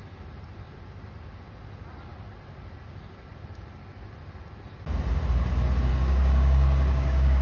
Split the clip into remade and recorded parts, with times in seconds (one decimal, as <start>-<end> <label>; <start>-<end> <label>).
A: 0.0-5.9 recorded; 5.9-7.4 remade